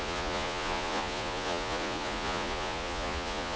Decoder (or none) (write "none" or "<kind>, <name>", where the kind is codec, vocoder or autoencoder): vocoder, Vocos